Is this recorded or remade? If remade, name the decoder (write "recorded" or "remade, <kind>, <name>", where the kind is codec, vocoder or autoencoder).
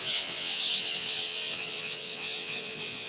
remade, vocoder, WaveNeXt